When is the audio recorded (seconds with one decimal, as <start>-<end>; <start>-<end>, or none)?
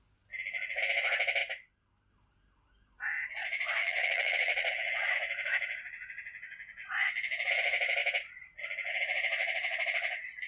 0.0-3.8; 4.7-10.5